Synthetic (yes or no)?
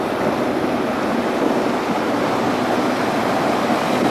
no